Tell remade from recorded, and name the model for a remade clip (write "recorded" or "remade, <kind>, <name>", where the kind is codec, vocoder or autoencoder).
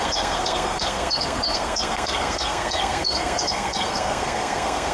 remade, codec, SNAC